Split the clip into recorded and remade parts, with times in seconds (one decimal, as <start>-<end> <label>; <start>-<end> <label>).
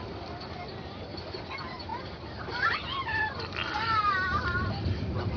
0.0-5.4 recorded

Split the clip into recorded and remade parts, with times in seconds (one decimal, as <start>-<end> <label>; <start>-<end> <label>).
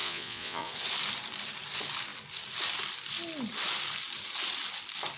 0.0-0.7 remade; 0.7-5.2 recorded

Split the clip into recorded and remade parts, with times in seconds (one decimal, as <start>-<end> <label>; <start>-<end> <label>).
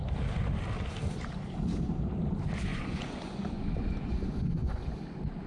0.0-2.7 recorded; 2.7-4.9 remade; 4.9-5.5 recorded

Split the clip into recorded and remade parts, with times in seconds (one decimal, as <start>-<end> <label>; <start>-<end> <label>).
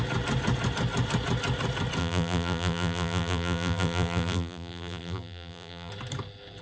0.0-2.0 recorded; 2.0-5.9 remade; 5.9-6.6 recorded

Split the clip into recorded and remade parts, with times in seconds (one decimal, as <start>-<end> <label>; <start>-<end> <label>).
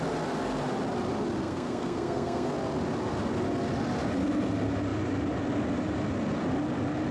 0.0-1.4 recorded; 1.4-2.5 remade; 2.5-7.1 recorded